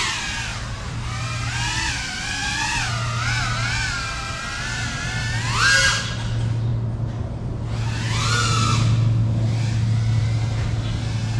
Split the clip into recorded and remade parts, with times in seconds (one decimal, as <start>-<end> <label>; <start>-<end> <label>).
0.0-11.4 recorded